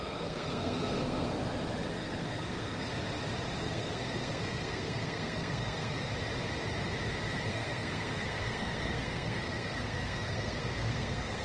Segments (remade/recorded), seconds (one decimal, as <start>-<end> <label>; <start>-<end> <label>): 0.0-1.3 remade; 1.3-1.9 recorded; 1.9-2.9 remade; 2.9-3.6 recorded; 3.6-6.1 remade; 6.1-7.5 recorded; 7.5-11.4 remade